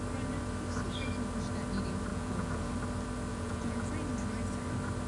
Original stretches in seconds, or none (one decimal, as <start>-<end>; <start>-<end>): 0.0-2.1; 2.7-3.3; 3.9-5.1